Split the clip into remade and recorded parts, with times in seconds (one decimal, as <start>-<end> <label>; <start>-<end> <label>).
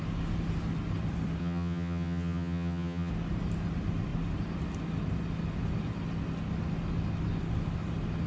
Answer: 0.0-1.4 recorded; 1.4-3.1 remade; 3.1-8.3 recorded